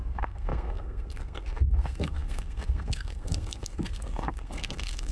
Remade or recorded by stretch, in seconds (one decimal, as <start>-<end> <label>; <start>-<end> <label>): 0.0-5.1 remade